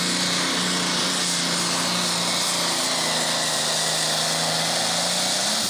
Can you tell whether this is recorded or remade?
recorded